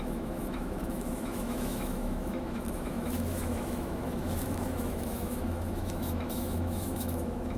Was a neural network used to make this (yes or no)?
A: yes